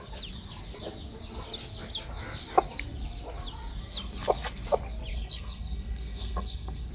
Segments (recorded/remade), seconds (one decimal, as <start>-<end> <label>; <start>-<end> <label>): 0.0-5.1 recorded; 5.1-6.9 remade